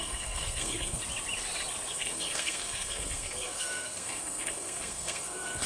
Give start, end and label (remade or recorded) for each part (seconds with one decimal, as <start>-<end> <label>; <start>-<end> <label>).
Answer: 0.0-1.0 remade; 1.0-1.9 recorded; 1.9-5.7 remade